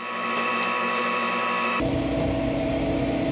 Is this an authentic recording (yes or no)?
yes